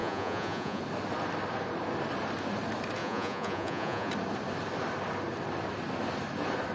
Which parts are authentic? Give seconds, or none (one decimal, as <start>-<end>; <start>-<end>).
0.8-3.0; 4.1-6.7